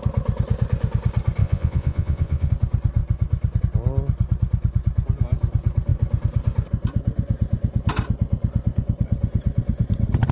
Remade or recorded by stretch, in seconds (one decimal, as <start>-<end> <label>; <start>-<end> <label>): 0.0-1.4 recorded; 1.4-2.5 remade; 2.5-10.3 recorded